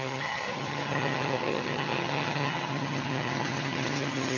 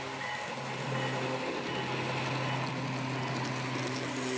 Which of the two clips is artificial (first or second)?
first